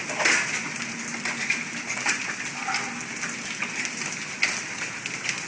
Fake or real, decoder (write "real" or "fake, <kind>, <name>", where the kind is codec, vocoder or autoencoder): real